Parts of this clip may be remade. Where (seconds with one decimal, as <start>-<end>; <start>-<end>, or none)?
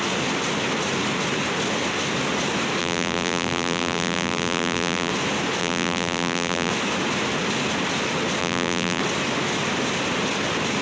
2.8-5.1; 5.6-6.7; 8.4-9.0